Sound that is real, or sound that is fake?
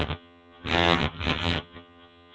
fake